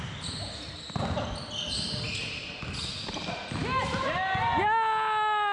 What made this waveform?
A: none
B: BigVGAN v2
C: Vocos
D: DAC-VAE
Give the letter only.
A